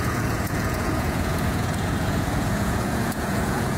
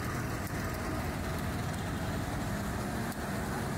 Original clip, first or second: second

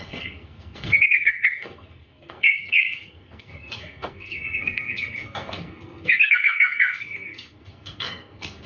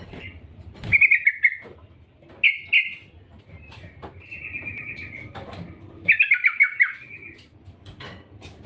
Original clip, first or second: second